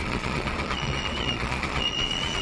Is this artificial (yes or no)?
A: yes